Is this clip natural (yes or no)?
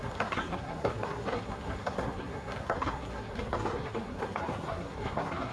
no